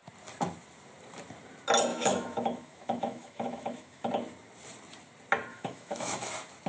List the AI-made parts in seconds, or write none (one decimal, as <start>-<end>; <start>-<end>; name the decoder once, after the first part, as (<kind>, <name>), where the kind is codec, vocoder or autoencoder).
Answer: 1.9-4.1 (autoencoder, DAC-VAE); 5.5-6.3